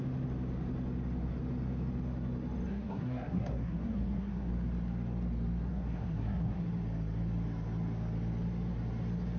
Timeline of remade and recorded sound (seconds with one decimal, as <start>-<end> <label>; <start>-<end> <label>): 0.0-2.7 recorded; 2.7-4.5 remade; 4.5-5.7 recorded; 5.7-6.6 remade; 6.6-9.4 recorded